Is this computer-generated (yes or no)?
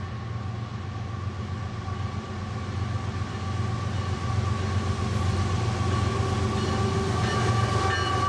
no